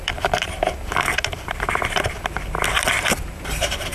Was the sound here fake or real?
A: fake